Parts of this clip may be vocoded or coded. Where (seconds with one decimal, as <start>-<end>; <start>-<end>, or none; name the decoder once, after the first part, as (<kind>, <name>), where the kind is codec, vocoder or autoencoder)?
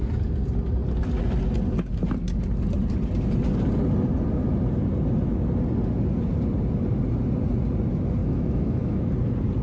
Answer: 8.2-9.1 (autoencoder, DAC-VAE)